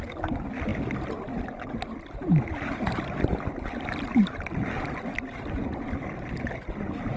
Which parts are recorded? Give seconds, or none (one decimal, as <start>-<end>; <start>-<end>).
0.0-7.2